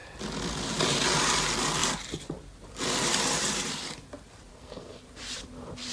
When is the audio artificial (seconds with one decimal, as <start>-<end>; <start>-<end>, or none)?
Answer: 4.5-5.0

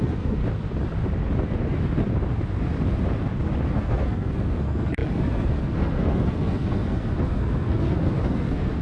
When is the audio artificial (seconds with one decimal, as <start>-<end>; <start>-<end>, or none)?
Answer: 0.0-0.4; 3.7-8.8

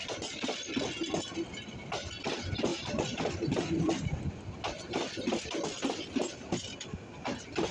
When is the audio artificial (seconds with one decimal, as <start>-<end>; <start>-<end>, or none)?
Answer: none

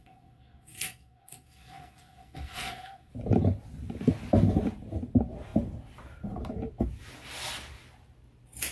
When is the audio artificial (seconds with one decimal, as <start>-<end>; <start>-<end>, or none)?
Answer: 0.0-3.1

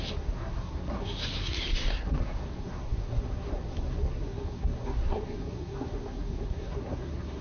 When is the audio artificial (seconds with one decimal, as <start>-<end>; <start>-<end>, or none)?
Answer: 0.0-7.4

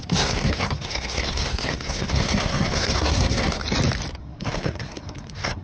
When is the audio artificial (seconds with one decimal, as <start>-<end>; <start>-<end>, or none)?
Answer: 0.0-3.6; 4.2-5.6